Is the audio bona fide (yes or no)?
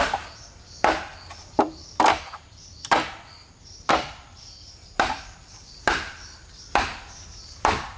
no